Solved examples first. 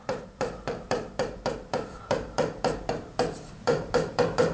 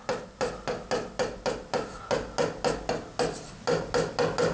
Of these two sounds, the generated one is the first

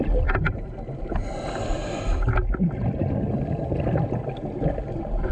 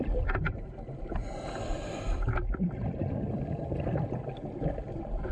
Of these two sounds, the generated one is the second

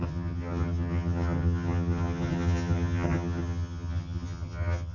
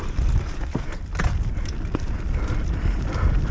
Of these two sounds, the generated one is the first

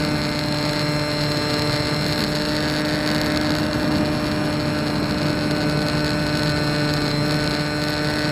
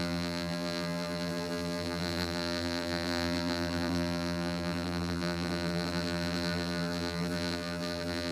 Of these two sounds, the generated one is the second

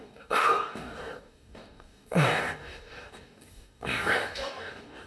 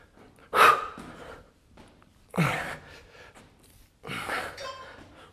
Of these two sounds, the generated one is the first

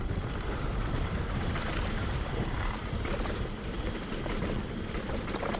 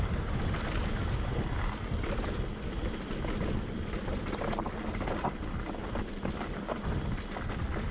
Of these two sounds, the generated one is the first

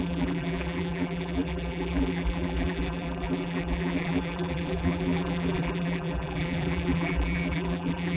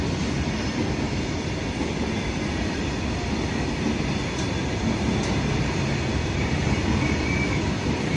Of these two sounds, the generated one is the first